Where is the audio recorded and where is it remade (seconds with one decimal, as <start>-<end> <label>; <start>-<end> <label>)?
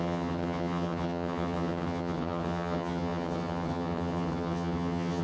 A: 0.0-5.2 remade